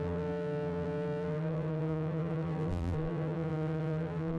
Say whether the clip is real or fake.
fake